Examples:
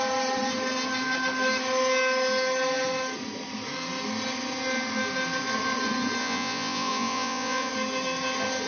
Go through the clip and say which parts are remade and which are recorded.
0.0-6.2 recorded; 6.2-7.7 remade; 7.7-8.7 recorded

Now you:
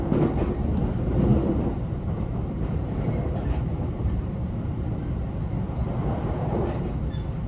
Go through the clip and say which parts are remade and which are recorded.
0.0-1.3 recorded; 1.3-5.1 remade; 5.1-5.8 recorded; 5.8-6.8 remade; 6.8-7.5 recorded

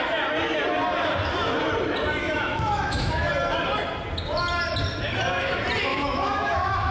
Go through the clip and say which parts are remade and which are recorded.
0.0-2.2 recorded; 2.2-3.3 remade; 3.3-5.9 recorded; 5.9-6.9 remade

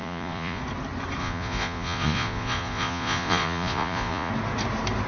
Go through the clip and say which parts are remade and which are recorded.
0.0-0.6 remade; 0.6-1.2 recorded; 1.2-4.3 remade; 4.3-5.1 recorded

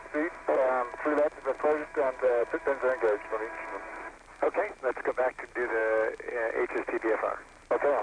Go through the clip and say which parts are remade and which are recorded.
0.0-1.8 recorded; 1.8-2.6 remade; 2.6-3.9 recorded; 3.9-4.6 remade; 4.6-8.0 recorded

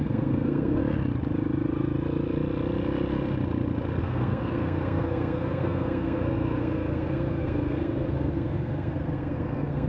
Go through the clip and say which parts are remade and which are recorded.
0.0-0.8 remade; 0.8-4.0 recorded; 4.0-9.9 remade